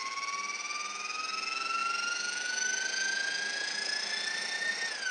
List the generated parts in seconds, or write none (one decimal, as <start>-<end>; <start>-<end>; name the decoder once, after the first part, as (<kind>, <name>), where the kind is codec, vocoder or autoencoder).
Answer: none